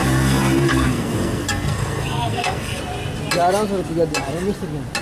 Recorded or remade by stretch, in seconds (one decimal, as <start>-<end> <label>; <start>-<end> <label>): 0.0-2.8 remade; 2.8-5.0 recorded